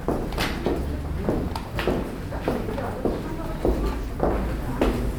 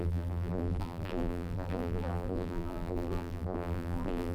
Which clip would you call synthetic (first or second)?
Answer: second